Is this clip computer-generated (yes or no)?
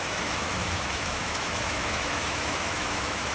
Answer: yes